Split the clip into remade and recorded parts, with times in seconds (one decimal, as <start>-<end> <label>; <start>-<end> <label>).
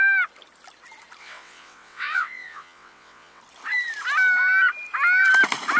0.0-1.2 recorded; 1.2-3.4 remade; 3.4-5.8 recorded